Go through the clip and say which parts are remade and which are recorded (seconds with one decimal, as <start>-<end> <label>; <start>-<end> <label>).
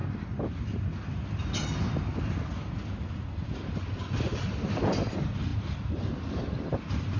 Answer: 0.0-7.2 recorded